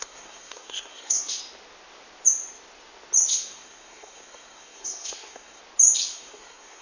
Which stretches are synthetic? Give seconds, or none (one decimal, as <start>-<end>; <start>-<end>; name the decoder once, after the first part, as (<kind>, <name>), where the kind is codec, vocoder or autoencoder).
0.0-1.4 (codec, SNAC); 3.3-5.6; 6.1-6.8